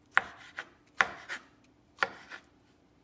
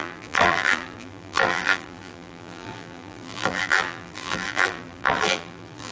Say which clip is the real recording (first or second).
first